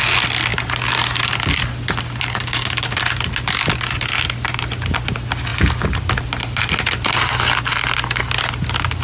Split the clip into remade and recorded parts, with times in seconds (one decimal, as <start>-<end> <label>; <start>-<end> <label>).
0.0-9.0 recorded